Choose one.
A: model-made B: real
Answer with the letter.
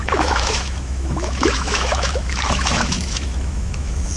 A